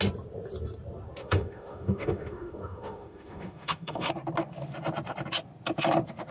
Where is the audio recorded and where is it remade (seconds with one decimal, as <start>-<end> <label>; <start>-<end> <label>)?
0.0-1.2 recorded; 1.2-4.1 remade; 4.1-6.3 recorded